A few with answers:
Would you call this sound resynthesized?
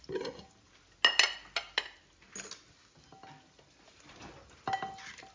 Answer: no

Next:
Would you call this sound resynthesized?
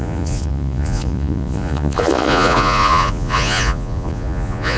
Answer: yes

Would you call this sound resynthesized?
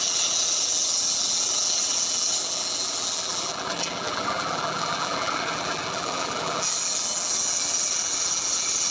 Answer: yes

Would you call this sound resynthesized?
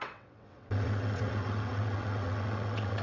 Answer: yes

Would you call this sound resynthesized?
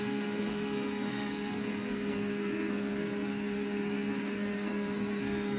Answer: yes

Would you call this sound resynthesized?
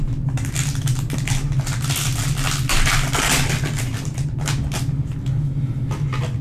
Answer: no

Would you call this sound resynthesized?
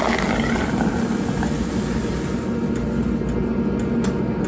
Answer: no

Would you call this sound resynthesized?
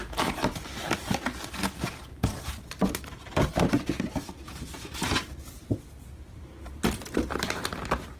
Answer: no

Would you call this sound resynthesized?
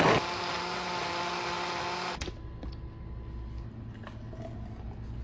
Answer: no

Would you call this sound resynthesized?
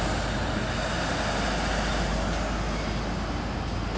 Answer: no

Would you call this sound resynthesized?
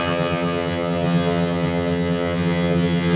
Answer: yes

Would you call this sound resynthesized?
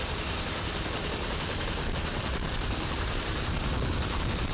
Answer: yes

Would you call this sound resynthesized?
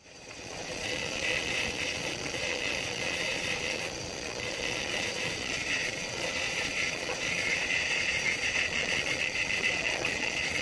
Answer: yes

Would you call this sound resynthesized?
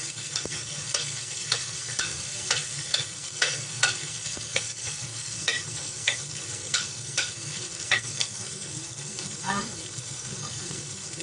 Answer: yes